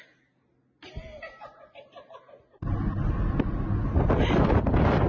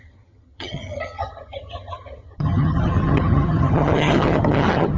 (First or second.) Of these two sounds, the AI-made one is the second